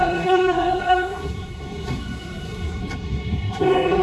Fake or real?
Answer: fake